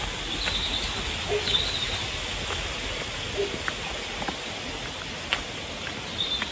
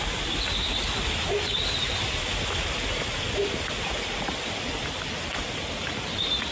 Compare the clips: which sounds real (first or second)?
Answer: first